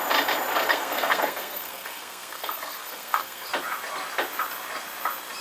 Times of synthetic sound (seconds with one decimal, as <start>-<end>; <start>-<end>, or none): 0.7-3.5